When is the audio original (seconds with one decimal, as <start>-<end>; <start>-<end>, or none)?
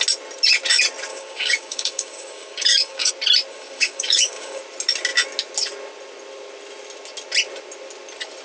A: 0.0-1.1; 3.1-3.5; 4.6-8.4